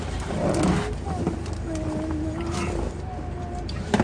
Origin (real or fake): real